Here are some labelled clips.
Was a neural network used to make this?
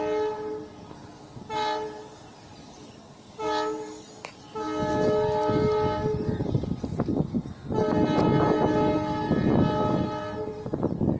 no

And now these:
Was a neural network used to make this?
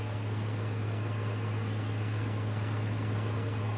yes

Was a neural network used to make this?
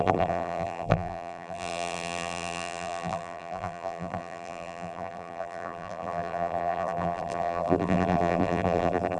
yes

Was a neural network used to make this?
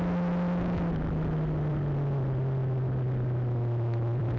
no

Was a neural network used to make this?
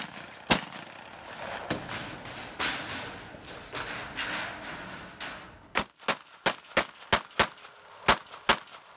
no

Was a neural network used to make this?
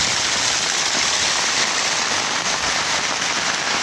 no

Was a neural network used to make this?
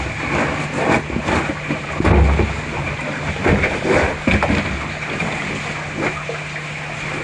no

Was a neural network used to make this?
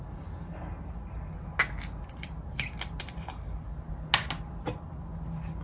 no